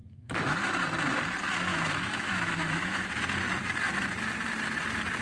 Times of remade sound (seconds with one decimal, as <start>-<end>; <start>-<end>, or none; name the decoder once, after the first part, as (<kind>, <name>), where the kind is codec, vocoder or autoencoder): 0.0-0.6 (autoencoder, DAC-VAE); 1.7-3.1